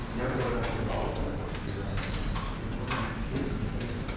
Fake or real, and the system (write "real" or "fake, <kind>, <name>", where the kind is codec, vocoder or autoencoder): real